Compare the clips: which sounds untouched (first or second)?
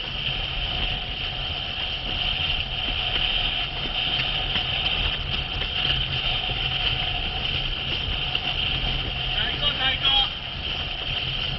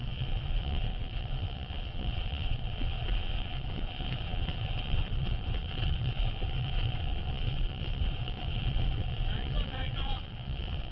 first